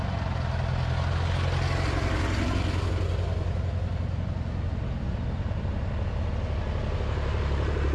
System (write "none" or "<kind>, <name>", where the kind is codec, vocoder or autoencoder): none